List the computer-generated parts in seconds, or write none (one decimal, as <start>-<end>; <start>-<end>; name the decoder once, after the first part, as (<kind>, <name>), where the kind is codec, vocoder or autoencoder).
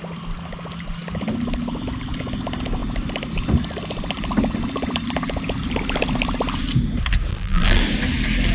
7.3-7.8 (vocoder, BigVGAN v2)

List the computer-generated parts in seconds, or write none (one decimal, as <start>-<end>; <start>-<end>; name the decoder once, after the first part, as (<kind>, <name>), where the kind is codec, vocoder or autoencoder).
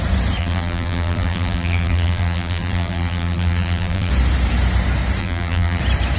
0.4-4.1 (vocoder, BigVGAN v2); 5.2-5.8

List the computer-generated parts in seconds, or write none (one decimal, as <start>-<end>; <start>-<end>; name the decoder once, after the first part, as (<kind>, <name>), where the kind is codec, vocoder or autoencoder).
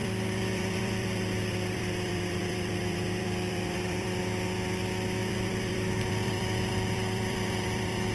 0.0-4.2 (vocoder, BigVGAN v2); 5.2-8.1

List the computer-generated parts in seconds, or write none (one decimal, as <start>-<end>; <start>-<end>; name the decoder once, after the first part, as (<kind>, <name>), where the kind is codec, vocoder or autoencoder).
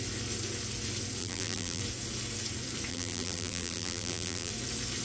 1.2-1.8 (vocoder, BigVGAN v2); 2.9-4.5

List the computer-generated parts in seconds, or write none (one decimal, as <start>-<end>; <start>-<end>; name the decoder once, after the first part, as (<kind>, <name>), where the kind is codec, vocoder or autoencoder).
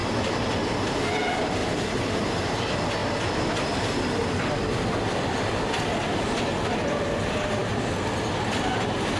1.6-2.3 (vocoder, BigVGAN v2)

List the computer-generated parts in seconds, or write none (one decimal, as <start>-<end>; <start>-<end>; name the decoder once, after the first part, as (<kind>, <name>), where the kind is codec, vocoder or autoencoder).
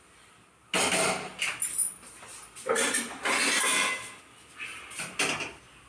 none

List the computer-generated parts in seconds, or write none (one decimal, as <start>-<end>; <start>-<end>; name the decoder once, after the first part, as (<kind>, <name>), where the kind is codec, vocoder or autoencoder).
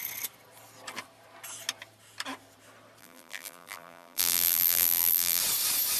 3.0-5.4 (vocoder, BigVGAN v2)